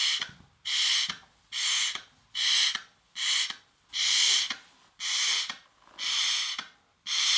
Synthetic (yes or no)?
no